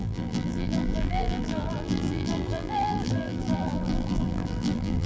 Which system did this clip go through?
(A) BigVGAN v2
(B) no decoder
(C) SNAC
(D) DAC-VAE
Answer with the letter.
A